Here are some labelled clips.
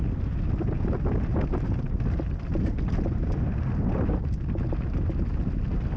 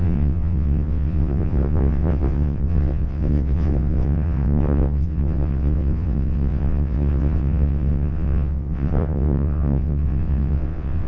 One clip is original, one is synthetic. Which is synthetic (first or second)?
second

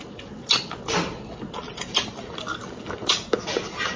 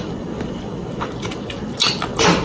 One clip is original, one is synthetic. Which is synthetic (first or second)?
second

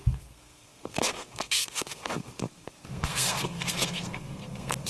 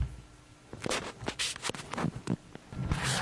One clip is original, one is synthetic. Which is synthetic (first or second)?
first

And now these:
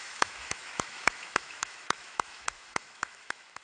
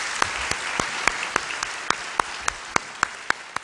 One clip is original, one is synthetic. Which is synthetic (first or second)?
first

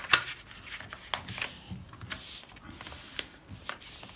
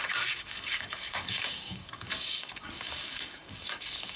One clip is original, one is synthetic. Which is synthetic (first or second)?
second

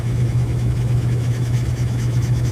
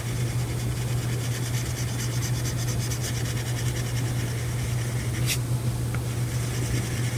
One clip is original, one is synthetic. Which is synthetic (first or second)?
first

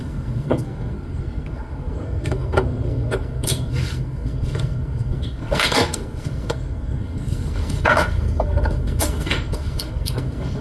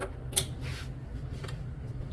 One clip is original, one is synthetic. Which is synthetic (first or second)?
first